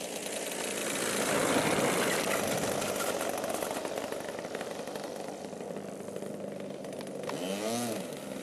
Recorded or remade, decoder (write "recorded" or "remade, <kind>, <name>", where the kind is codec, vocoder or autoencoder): recorded